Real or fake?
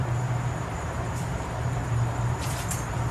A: fake